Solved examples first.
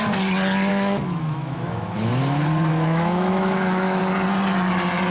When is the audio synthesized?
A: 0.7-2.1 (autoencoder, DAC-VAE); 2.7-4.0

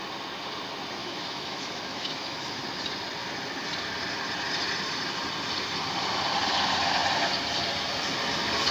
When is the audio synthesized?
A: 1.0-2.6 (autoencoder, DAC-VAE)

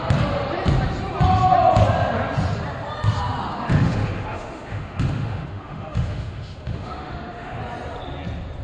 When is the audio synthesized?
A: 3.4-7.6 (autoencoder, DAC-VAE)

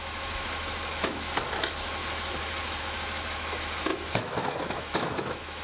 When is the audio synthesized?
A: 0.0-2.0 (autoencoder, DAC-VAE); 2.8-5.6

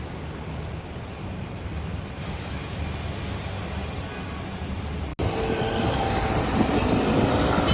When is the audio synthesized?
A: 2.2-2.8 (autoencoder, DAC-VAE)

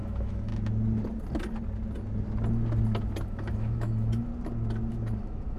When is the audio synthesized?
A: 0.0-0.5 (autoencoder, DAC-VAE); 3.3-4.3; 4.9-5.6